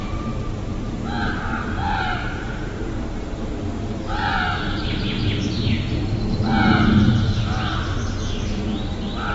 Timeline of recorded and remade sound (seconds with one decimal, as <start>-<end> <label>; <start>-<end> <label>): 0.0-0.7 recorded; 0.7-3.4 remade; 3.4-9.3 recorded

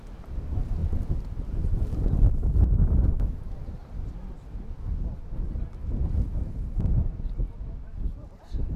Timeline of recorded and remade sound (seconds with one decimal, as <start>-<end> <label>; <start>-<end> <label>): 0.0-3.8 remade; 3.8-6.0 recorded; 6.0-8.8 remade

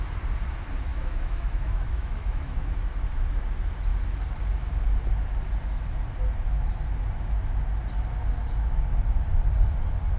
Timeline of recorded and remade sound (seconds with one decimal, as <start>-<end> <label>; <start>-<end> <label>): 0.0-0.9 recorded; 0.9-3.0 remade; 3.0-10.2 recorded

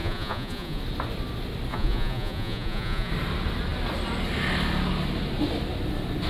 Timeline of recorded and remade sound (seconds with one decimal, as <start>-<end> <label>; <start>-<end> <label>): 0.0-0.8 remade; 0.8-1.7 recorded; 1.7-3.1 remade; 3.1-6.3 recorded